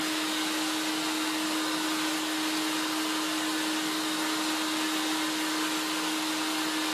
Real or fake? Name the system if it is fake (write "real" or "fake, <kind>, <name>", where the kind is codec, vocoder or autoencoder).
real